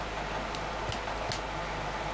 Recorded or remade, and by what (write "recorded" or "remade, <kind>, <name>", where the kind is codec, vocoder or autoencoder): recorded